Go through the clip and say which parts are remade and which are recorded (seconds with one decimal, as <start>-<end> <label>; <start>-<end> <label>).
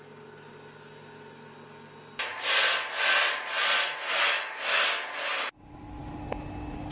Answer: 0.0-6.9 recorded